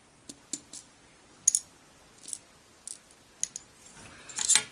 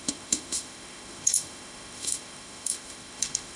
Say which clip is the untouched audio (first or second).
first